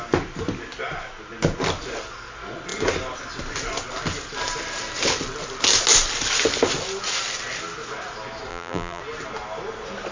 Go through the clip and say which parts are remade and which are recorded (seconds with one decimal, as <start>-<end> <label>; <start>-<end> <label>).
0.0-8.5 recorded; 8.5-9.0 remade; 9.0-10.1 recorded